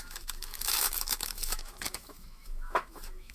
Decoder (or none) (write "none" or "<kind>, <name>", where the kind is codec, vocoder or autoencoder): autoencoder, DAC-VAE